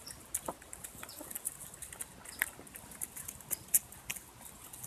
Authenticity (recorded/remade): recorded